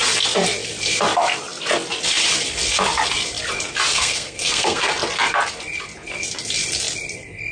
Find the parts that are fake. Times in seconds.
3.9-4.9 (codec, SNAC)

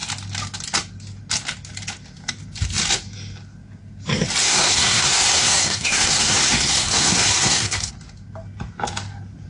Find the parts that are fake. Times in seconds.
4.4-7.9 (codec, SNAC)